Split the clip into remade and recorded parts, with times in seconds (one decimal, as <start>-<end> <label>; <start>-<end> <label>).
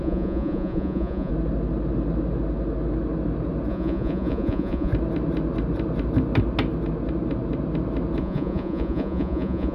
0.0-1.3 remade; 1.3-3.7 recorded; 3.7-4.9 remade; 4.9-8.2 recorded; 8.2-9.7 remade